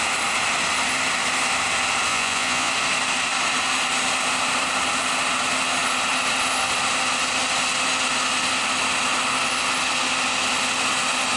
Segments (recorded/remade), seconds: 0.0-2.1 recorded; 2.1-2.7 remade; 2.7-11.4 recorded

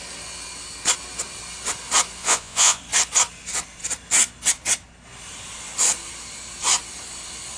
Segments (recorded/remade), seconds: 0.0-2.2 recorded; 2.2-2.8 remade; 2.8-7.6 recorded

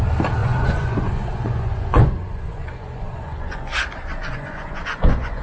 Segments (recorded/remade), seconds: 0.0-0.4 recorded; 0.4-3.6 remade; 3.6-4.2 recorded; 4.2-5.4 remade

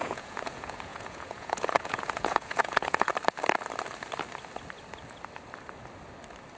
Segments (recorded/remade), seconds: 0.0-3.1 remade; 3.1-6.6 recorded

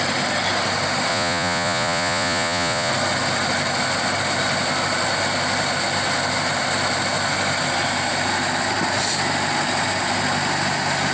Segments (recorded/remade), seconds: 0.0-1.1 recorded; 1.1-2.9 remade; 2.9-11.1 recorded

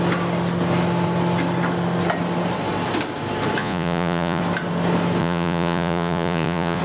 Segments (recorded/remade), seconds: 0.0-3.6 recorded; 3.6-4.4 remade; 4.4-5.2 recorded; 5.2-6.8 remade

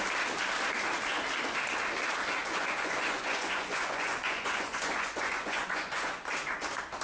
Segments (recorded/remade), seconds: 0.0-2.4 recorded; 2.4-6.3 remade; 6.3-7.0 recorded